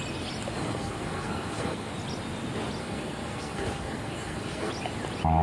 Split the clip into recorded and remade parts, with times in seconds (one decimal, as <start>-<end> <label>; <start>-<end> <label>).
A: 0.0-0.6 recorded; 0.6-1.9 remade; 1.9-2.8 recorded; 2.8-4.7 remade; 4.7-5.4 recorded